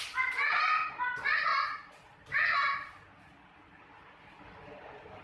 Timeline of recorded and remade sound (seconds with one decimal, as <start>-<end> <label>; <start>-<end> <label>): 0.0-5.2 recorded